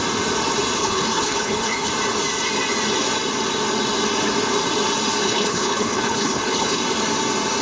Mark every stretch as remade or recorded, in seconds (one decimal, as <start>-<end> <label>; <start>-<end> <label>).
0.0-0.8 recorded; 0.8-1.9 remade; 1.9-5.2 recorded; 5.2-6.8 remade; 6.8-7.6 recorded